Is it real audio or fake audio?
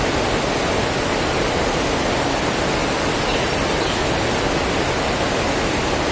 real